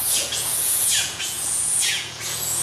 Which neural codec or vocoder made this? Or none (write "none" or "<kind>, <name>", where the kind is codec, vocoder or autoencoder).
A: vocoder, Vocos